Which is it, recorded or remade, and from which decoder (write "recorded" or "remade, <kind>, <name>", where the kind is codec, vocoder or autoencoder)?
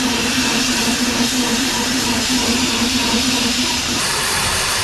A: remade, vocoder, BigVGAN v2